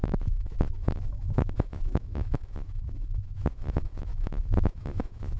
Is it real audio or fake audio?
fake